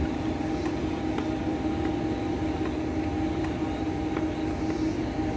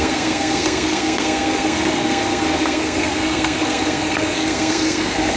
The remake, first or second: second